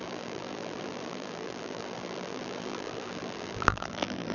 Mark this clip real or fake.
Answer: fake